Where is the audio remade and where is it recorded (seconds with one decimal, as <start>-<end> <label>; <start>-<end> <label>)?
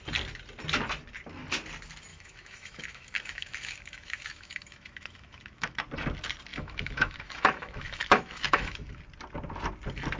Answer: 0.0-2.1 recorded; 2.1-5.8 remade; 5.8-6.5 recorded; 6.5-9.0 remade; 9.0-10.2 recorded